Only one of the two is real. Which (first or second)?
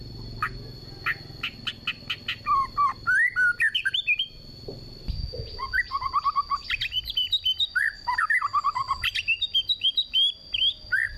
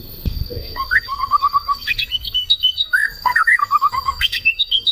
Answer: first